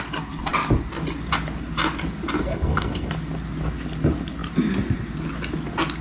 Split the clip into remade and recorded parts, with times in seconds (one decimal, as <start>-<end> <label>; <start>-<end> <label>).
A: 0.0-2.4 recorded; 2.4-3.1 remade; 3.1-6.0 recorded